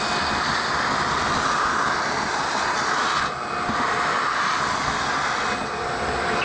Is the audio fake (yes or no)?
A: no